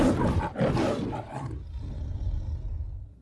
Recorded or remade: remade